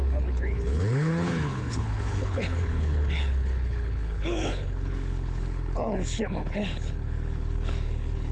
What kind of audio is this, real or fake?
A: fake